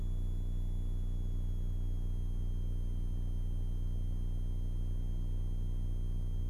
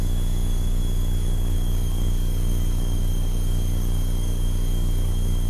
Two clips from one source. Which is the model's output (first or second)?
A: second